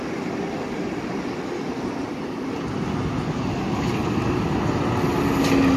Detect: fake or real real